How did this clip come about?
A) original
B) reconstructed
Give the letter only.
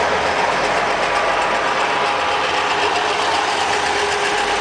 A